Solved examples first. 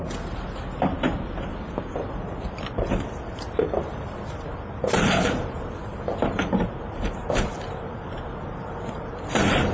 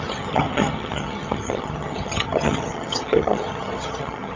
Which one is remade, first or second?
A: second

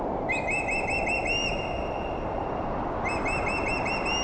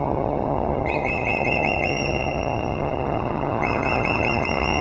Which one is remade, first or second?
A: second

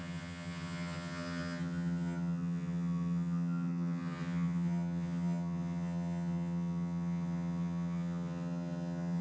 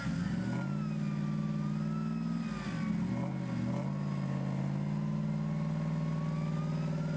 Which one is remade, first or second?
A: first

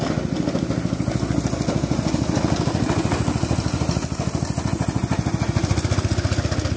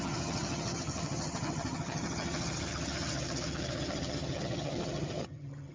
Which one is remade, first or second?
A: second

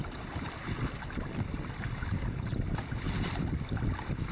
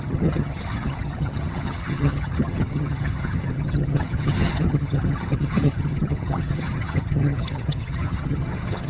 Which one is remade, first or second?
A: second